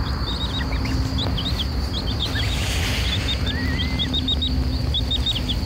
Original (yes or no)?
yes